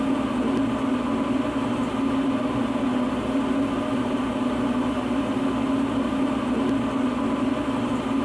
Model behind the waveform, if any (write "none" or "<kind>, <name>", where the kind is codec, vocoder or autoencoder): none